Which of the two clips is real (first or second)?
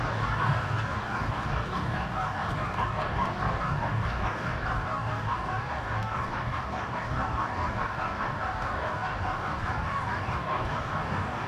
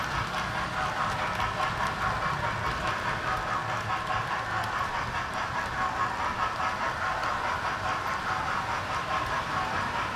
second